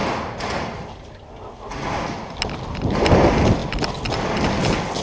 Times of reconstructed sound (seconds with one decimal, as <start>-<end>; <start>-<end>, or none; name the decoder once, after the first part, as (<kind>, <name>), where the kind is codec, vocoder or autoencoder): none